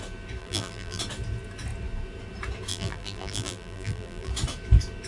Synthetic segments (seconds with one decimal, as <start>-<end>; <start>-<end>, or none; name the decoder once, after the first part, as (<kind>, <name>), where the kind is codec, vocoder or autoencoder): 0.4-1.0 (vocoder, BigVGAN v2); 2.7-4.3